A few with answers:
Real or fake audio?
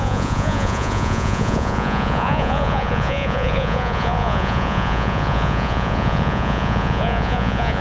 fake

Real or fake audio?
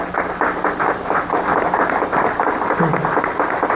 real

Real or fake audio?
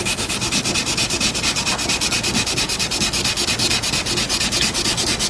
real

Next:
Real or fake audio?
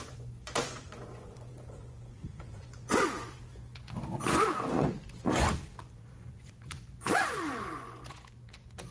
fake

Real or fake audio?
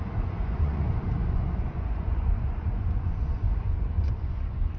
fake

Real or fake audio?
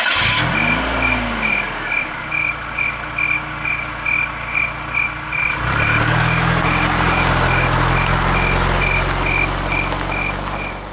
real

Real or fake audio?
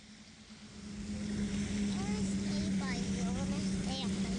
real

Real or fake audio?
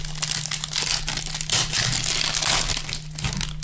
real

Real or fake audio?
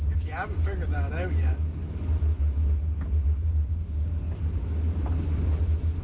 real